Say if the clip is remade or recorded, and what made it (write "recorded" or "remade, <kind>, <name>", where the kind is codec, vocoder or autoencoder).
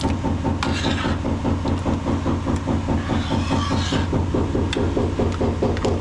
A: recorded